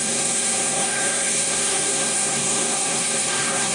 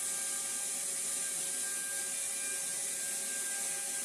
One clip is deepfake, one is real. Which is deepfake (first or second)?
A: first